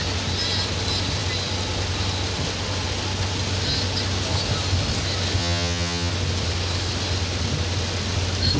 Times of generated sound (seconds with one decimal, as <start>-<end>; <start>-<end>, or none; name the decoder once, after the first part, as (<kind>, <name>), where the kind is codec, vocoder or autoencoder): 5.4-6.1 (vocoder, HiFi-GAN)